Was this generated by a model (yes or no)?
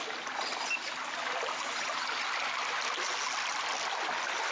no